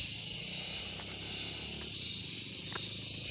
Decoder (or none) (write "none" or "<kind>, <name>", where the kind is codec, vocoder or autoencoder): none